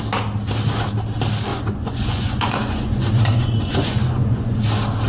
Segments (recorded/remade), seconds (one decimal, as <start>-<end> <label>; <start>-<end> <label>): 0.0-1.5 recorded; 1.5-4.6 remade; 4.6-5.1 recorded